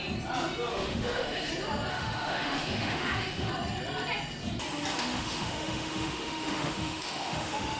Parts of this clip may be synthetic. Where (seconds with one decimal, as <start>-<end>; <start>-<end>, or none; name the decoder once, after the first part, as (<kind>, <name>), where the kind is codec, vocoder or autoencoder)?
0.7-1.5 (autoencoder, DAC-VAE); 1.9-3.5; 5.0-7.8